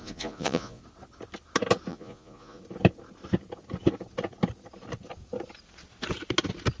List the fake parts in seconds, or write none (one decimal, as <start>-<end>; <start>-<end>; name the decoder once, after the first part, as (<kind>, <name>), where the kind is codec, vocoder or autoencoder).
0.0-0.8 (vocoder, Vocos); 1.9-2.6